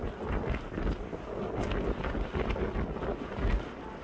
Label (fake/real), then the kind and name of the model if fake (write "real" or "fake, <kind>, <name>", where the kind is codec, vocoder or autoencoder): real